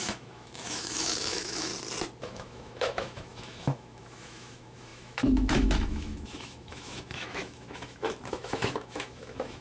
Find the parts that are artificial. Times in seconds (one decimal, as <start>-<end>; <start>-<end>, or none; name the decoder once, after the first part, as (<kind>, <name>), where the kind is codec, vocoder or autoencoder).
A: 0.0-1.7 (autoencoder, DAC-VAE); 2.2-9.6